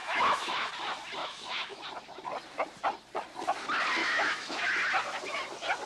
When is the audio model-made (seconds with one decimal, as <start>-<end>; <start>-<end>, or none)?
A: 0.0-0.7; 1.2-1.8; 4.0-4.7

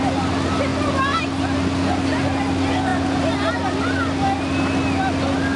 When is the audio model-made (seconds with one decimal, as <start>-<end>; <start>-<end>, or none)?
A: none